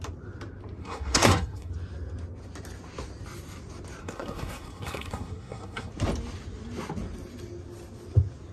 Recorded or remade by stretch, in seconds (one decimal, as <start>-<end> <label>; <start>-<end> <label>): 0.0-0.8 recorded; 0.8-1.7 remade; 1.7-4.0 recorded; 4.0-5.9 remade; 5.9-8.5 recorded